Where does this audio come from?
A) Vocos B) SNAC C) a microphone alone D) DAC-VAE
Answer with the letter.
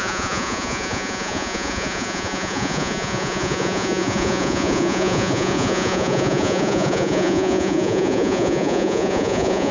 A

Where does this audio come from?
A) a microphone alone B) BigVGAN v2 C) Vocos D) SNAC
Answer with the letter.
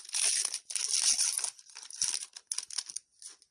A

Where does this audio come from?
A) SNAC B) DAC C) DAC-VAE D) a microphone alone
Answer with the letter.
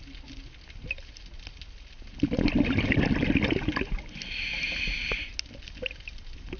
D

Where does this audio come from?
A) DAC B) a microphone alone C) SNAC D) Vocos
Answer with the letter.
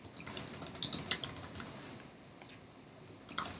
B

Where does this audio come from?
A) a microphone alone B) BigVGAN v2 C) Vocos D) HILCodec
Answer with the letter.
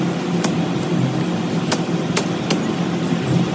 A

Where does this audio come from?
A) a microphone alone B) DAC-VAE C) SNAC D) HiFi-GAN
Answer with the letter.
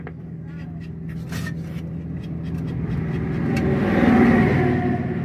A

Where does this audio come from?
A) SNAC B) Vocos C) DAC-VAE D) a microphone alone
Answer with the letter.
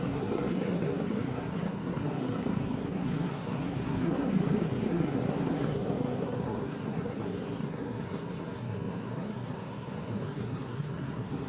A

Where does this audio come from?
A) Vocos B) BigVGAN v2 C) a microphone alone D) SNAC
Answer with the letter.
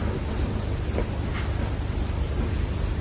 C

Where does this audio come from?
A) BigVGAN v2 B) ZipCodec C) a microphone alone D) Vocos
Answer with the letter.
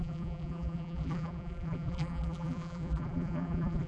A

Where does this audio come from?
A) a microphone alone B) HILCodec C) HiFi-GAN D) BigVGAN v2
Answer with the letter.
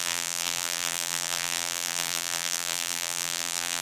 D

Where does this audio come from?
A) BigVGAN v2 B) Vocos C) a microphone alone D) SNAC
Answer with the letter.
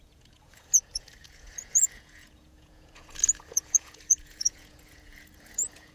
B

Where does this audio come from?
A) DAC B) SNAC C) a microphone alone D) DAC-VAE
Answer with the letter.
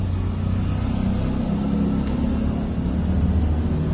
C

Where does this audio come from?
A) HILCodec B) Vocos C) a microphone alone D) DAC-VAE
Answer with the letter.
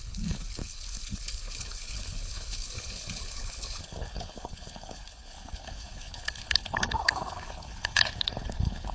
A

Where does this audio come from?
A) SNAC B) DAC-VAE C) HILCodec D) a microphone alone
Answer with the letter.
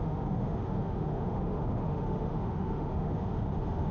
B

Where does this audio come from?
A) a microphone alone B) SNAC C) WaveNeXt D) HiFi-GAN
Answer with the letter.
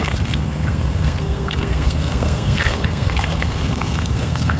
B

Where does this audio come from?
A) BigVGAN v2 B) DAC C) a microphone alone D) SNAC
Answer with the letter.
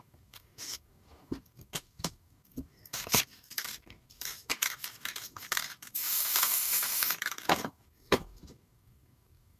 B